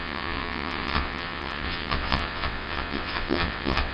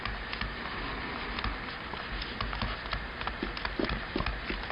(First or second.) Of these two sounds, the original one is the second